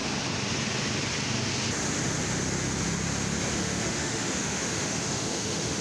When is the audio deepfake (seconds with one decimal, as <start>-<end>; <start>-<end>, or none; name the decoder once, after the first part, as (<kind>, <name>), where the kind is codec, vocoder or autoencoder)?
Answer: 3.5-5.8 (autoencoder, DAC-VAE)